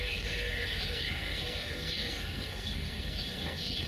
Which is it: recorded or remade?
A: remade